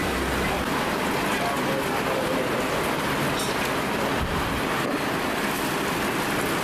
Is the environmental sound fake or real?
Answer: real